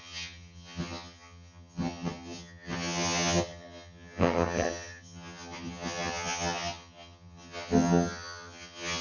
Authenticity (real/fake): fake